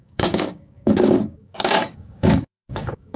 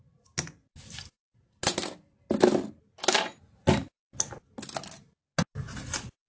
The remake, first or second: first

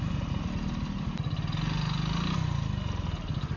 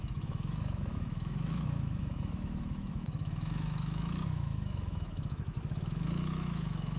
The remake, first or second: second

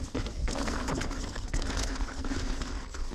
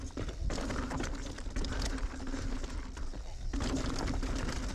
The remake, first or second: first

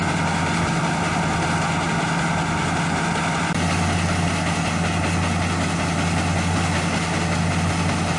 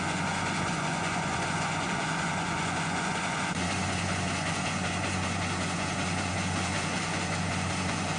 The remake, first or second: second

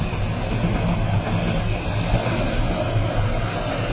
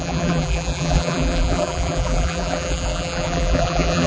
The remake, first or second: second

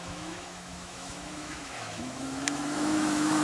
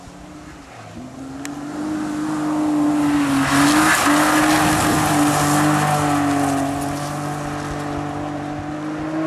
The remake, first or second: first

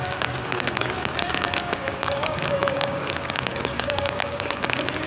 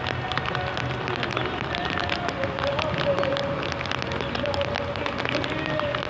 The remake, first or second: first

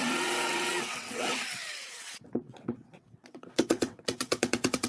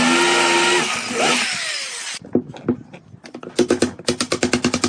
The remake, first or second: first